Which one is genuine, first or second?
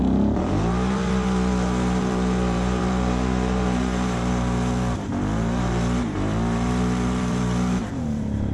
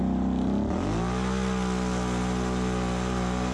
second